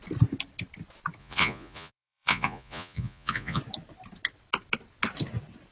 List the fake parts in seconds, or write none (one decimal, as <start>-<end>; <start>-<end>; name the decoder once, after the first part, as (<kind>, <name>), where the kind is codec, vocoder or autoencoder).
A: 1.2-3.6 (vocoder, Vocos)